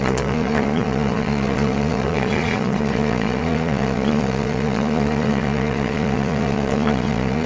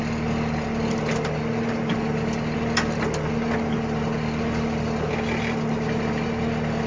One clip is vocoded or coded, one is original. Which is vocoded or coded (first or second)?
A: first